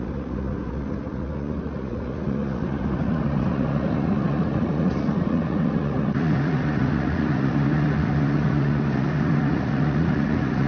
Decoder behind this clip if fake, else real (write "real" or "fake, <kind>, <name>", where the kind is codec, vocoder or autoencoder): fake, vocoder, Vocos